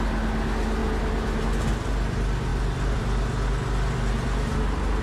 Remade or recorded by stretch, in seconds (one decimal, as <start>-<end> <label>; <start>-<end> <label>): 0.0-0.8 recorded; 0.8-1.4 remade; 1.4-2.5 recorded; 2.5-3.0 remade; 3.0-5.0 recorded

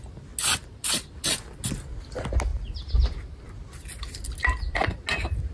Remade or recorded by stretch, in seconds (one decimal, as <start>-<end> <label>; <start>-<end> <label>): 0.0-0.6 recorded; 0.6-1.6 remade; 1.6-5.5 recorded